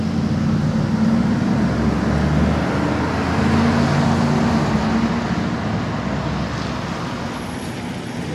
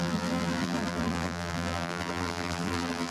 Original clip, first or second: first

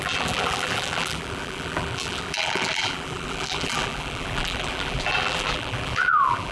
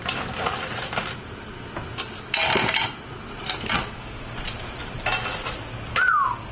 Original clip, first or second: second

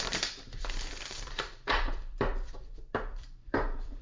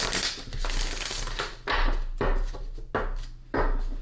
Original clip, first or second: second